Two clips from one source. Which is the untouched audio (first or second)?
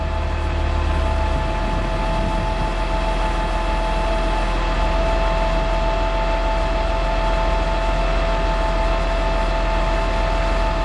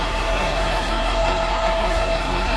first